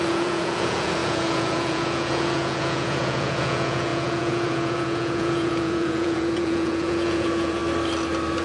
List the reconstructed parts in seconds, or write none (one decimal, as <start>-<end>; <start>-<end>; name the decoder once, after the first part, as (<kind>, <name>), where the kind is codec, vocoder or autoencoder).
0.0-7.6 (vocoder, Vocos)